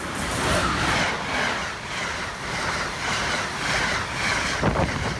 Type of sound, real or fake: real